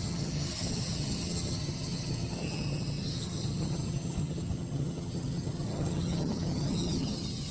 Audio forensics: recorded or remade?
remade